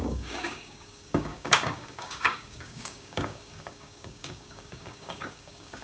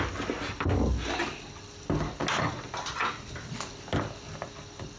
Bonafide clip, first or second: second